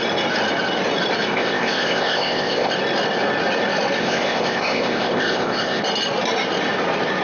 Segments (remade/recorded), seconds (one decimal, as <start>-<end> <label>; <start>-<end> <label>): 0.0-1.3 recorded; 1.3-2.7 remade; 2.7-4.0 recorded; 4.0-5.8 remade; 5.8-7.2 recorded